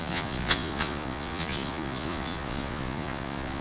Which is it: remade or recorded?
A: remade